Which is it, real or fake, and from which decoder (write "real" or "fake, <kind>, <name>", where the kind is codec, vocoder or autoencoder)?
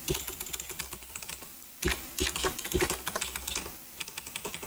fake, vocoder, BigVGAN v2